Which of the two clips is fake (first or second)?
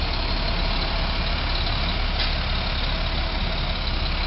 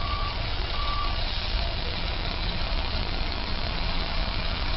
second